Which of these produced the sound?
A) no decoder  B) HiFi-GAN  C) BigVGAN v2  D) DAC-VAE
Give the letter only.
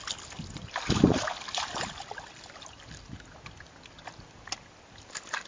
A